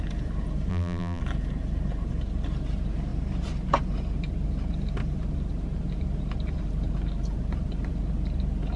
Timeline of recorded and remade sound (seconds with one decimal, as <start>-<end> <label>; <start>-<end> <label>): 0.0-0.7 recorded; 0.7-1.2 remade; 1.2-8.8 recorded